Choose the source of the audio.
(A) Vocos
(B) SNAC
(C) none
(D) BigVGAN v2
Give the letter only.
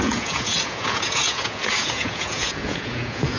A